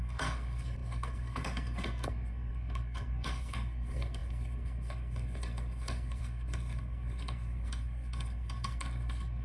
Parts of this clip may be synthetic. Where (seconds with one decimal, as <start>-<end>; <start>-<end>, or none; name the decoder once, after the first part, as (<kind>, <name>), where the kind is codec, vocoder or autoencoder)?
0.0-9.4 (codec, SNAC)